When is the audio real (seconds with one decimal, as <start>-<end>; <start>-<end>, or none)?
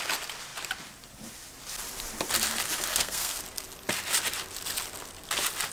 0.0-2.9; 3.4-5.7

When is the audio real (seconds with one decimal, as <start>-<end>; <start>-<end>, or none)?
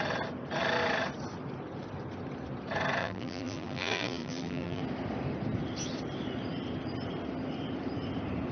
0.0-3.0; 4.8-8.5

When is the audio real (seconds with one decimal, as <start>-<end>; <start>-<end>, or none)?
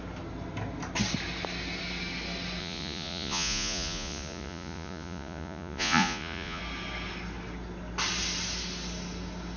0.0-2.6; 6.6-9.6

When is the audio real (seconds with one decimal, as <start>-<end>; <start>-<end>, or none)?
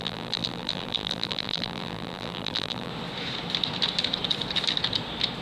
2.9-5.4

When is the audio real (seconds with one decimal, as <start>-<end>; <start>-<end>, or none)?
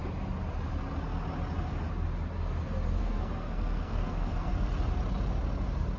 0.0-3.0; 4.5-6.0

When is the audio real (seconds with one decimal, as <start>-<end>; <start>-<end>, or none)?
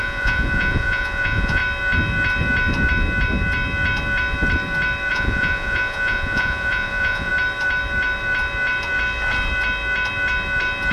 1.6-5.1; 7.3-10.9